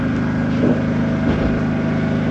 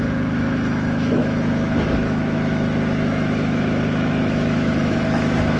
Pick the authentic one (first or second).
first